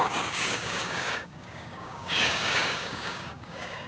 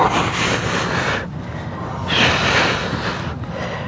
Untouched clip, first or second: second